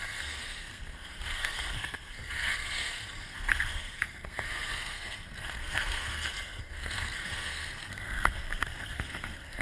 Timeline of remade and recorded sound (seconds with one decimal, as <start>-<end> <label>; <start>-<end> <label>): 0.0-9.6 remade